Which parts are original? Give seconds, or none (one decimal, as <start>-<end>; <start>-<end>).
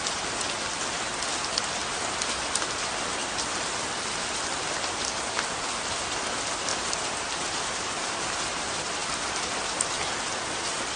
0.0-3.2; 3.8-6.7; 8.4-11.0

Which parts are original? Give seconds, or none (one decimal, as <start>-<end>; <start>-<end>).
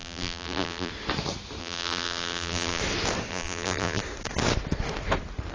0.9-1.6; 2.8-3.3; 4.0-5.5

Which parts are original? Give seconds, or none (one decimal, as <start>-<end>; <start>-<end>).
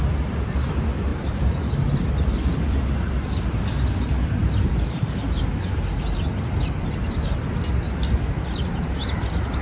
0.0-1.1; 1.7-4.4; 5.4-9.6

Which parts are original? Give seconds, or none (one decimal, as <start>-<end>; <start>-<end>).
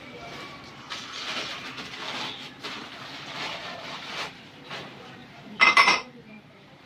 1.0-3.6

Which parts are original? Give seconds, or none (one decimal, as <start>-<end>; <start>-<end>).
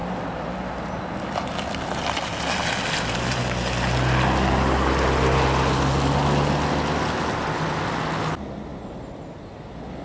0.0-8.7; 9.5-10.0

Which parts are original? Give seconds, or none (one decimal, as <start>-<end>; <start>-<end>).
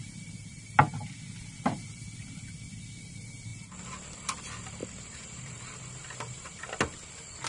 0.0-4.8; 6.6-7.5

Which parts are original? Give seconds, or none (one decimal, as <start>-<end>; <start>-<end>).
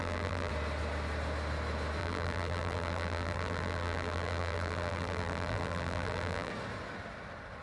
0.5-2.0; 6.5-7.6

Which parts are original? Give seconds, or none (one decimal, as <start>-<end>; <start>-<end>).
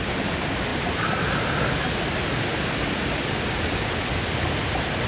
0.0-0.7; 1.8-2.5; 4.6-5.1